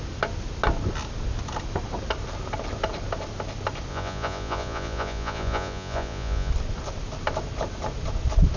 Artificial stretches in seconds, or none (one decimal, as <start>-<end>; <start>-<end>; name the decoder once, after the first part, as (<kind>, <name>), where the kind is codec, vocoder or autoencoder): 3.9-6.5 (vocoder, Vocos)

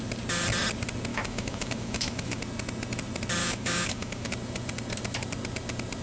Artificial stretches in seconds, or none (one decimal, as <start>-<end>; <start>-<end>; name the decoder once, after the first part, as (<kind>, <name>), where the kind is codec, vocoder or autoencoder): 1.1-2.4 (autoencoder, DAC-VAE); 3.4-4.3

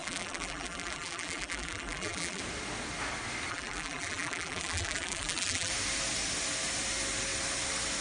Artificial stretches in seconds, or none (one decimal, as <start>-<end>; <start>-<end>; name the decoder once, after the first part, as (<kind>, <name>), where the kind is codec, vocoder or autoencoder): 0.0-2.4 (vocoder, BigVGAN v2); 3.5-5.7

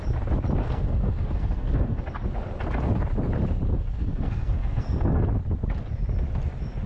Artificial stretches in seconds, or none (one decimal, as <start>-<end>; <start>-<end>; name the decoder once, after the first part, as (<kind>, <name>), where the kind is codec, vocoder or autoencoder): 0.6-2.0 (codec, SNAC); 3.7-5.3